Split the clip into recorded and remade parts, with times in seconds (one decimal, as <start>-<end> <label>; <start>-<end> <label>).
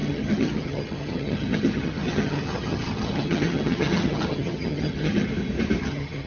0.0-5.3 remade; 5.3-5.8 recorded; 5.8-6.3 remade